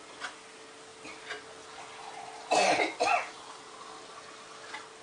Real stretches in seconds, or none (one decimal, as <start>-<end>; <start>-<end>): 0.0-5.0